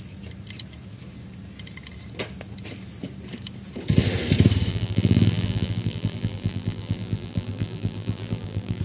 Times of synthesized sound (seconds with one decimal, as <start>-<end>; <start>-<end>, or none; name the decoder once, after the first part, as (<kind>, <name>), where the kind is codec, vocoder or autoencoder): 4.7-8.8 (vocoder, BigVGAN v2)